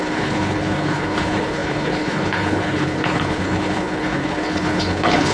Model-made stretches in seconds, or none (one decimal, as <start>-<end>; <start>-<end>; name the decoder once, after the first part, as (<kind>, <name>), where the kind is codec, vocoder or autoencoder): 0.0-5.3 (codec, HILCodec)